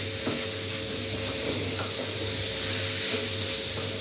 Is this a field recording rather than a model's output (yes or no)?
yes